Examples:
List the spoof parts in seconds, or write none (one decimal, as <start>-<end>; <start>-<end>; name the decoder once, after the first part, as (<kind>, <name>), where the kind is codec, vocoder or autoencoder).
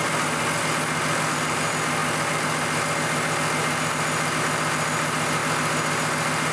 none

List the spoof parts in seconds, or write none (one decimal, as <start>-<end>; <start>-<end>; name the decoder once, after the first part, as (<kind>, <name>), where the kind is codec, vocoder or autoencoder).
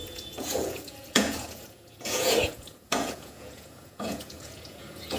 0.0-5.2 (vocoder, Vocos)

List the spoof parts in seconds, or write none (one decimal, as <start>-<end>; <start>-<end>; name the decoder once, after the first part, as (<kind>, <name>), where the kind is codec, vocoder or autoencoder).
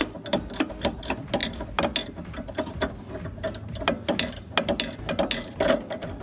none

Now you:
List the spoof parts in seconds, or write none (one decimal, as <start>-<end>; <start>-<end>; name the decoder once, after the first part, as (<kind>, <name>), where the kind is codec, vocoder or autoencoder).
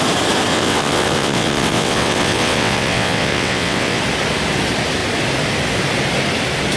0.5-4.0 (vocoder, WaveNeXt)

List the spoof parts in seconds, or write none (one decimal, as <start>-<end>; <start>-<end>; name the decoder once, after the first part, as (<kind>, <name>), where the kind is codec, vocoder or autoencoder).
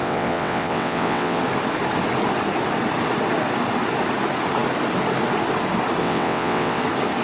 0.0-1.4 (vocoder, WaveNeXt); 6.0-6.8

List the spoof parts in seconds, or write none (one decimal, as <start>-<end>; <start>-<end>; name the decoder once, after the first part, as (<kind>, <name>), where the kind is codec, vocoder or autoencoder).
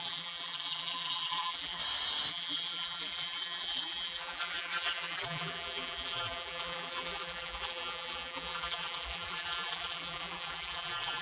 0.0-1.8 (vocoder, BigVGAN v2); 2.3-11.2